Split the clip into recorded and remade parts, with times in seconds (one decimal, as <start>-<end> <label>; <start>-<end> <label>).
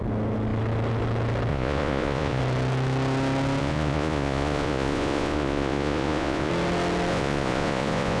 0.0-1.5 recorded; 1.5-2.4 remade; 2.4-3.6 recorded; 3.6-6.5 remade; 6.5-7.1 recorded; 7.1-8.2 remade